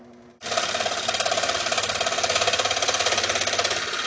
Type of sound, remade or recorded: recorded